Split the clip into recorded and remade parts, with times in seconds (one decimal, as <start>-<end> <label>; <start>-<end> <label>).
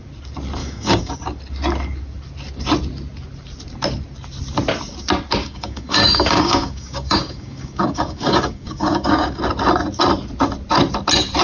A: 0.0-0.6 recorded; 0.6-1.1 remade; 1.1-5.4 recorded; 5.4-9.4 remade; 9.4-11.4 recorded